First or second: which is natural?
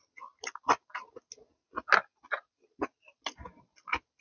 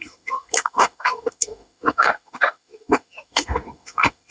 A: first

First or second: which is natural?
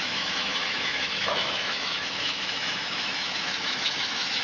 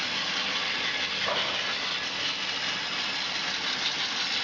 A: second